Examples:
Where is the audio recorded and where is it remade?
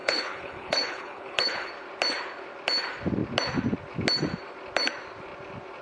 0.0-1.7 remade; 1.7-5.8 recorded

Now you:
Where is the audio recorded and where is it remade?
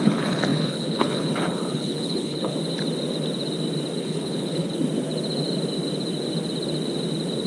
0.0-2.5 remade; 2.5-4.0 recorded; 4.0-4.8 remade; 4.8-7.5 recorded